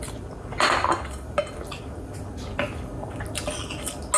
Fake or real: real